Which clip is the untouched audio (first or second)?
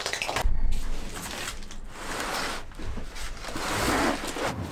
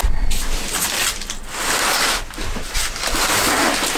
first